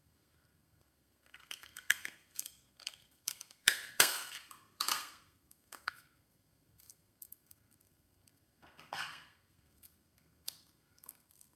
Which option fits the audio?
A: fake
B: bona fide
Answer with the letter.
A